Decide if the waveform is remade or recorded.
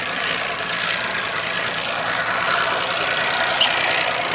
recorded